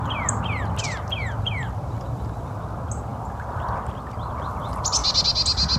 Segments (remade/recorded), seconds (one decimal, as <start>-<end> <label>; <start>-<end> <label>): 0.0-5.8 recorded